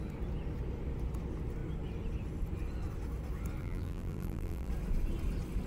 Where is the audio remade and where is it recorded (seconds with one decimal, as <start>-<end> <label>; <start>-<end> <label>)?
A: 0.0-3.6 recorded; 3.6-4.7 remade; 4.7-5.7 recorded